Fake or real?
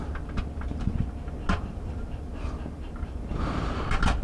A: real